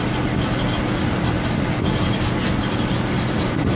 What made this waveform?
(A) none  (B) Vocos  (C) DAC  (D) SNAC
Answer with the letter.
A